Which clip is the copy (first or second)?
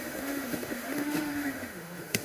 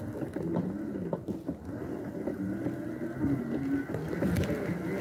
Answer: first